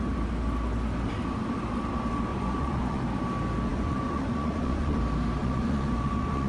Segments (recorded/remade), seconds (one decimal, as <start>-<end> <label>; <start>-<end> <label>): 0.0-2.3 recorded; 2.3-3.0 remade; 3.0-3.7 recorded; 3.7-5.0 remade; 5.0-5.4 recorded; 5.4-6.5 remade